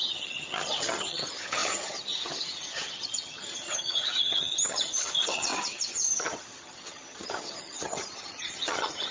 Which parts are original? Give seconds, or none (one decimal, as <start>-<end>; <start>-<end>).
none